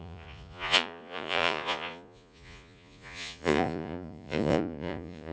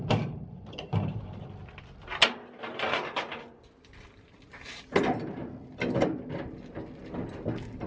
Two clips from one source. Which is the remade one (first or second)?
first